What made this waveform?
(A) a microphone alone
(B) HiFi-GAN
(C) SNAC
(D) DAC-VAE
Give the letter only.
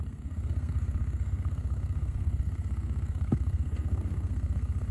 C